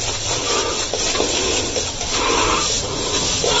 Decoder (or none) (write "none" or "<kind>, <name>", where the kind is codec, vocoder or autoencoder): vocoder, BigVGAN v2